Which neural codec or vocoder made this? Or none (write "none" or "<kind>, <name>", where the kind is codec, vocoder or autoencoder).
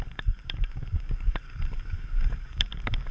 codec, DAC